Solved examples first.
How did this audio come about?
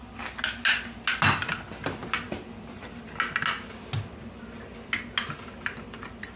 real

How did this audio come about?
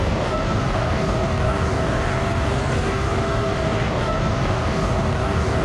fake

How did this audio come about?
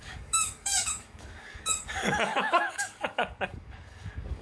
fake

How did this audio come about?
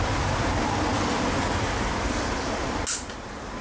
real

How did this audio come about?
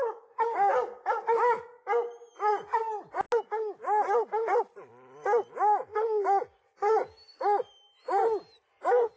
real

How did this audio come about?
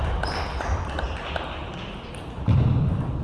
real